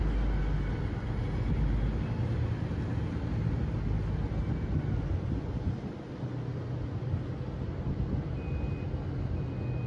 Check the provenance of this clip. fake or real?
real